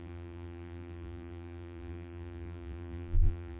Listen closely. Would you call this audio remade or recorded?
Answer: remade